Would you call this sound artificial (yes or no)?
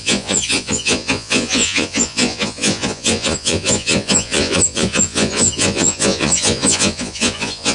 yes